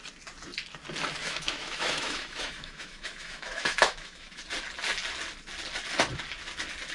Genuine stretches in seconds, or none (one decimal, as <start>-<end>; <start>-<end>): 0.0-1.2; 4.4-6.9